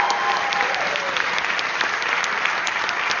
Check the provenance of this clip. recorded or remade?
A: recorded